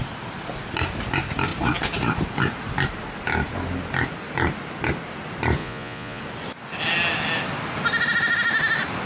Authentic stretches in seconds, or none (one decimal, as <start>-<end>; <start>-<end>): 0.0-5.6; 6.2-9.1